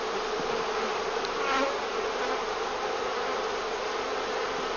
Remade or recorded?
recorded